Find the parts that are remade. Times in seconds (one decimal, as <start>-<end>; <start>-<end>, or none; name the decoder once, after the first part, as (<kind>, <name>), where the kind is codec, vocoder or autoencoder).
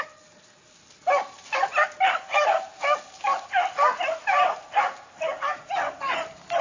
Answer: none